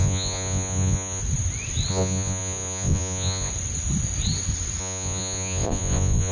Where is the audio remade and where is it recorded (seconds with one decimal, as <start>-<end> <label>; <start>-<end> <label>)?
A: 0.0-1.2 remade; 1.2-1.9 recorded; 1.9-3.5 remade; 3.5-4.8 recorded; 4.8-6.3 remade